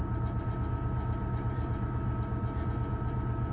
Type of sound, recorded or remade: recorded